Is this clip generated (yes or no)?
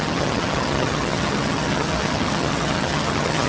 yes